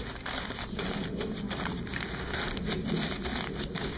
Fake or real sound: real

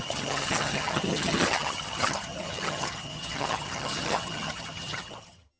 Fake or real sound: fake